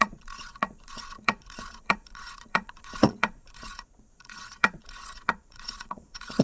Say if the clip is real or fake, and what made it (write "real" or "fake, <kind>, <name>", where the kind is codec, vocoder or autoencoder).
fake, vocoder, Vocos